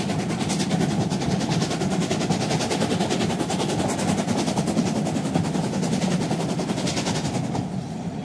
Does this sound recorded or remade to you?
recorded